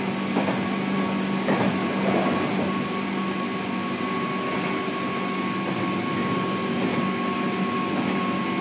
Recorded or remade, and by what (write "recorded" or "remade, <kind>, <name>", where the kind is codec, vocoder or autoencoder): recorded